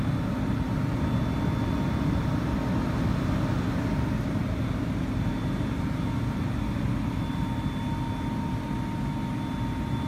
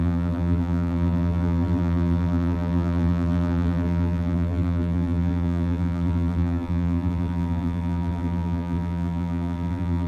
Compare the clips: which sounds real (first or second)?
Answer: first